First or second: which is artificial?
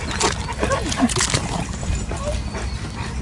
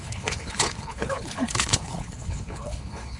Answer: second